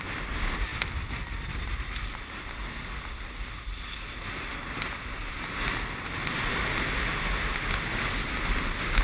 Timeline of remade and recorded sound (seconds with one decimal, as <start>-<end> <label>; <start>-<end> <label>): 0.0-9.0 recorded